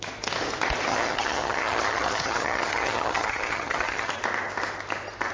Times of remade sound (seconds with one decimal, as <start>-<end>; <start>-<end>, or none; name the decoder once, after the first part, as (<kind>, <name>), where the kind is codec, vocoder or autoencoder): 0.9-4.1 (vocoder, HiFi-GAN)